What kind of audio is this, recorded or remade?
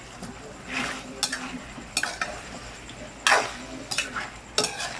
recorded